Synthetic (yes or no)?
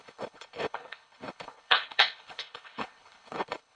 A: yes